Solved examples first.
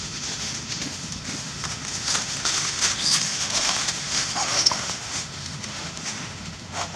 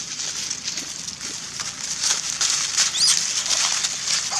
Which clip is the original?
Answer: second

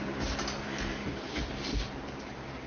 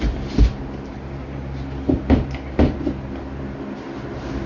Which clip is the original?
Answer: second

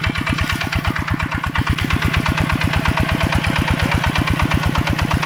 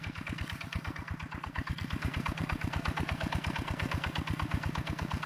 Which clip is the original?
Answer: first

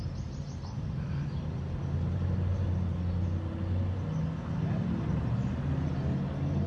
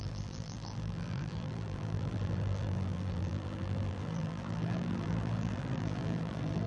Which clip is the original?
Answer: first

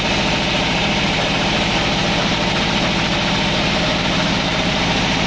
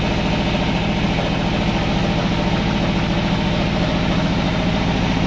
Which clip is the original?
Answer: second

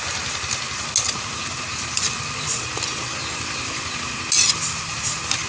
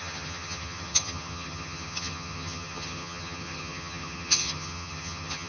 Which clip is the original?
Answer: first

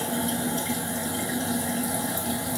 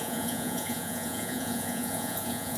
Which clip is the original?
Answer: first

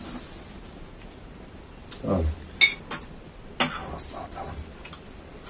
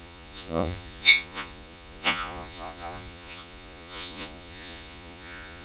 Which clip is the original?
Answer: first